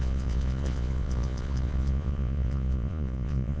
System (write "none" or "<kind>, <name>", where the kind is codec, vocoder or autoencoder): vocoder, Vocos